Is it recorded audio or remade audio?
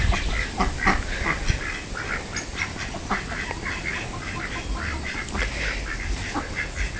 recorded